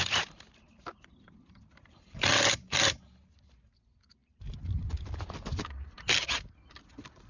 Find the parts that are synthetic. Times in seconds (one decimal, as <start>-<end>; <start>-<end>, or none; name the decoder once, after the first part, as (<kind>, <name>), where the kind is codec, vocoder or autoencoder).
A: none